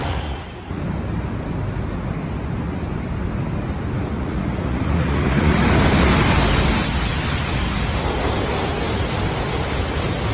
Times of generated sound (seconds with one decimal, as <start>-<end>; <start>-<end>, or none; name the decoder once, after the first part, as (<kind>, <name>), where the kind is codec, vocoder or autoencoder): 0.0-0.8 (vocoder, Vocos); 4.1-5.6